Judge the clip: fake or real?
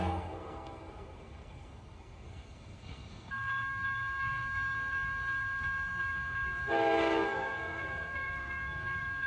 fake